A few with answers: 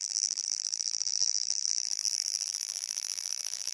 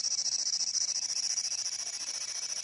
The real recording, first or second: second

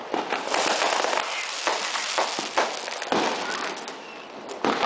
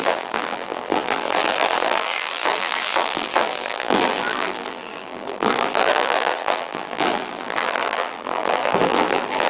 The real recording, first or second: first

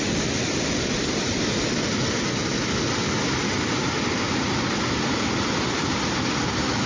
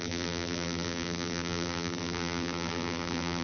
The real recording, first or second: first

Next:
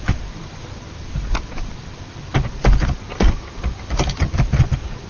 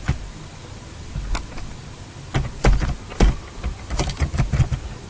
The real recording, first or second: second